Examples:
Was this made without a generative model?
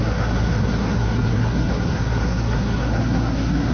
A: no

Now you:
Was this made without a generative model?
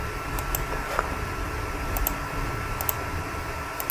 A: yes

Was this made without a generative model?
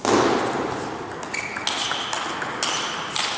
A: yes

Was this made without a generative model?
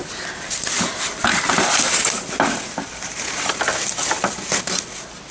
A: yes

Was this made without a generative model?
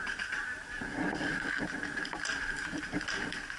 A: no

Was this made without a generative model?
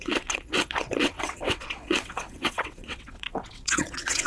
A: no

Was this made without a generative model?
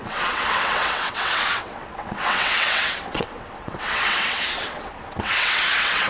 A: no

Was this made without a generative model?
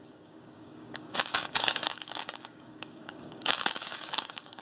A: no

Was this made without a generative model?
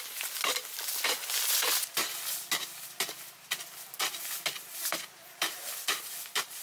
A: yes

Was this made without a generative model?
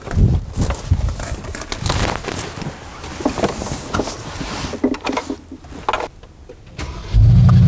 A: yes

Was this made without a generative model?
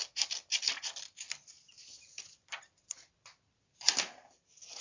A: yes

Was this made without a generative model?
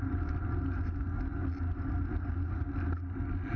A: yes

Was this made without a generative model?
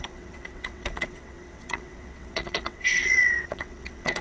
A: no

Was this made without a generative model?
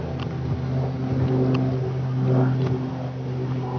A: yes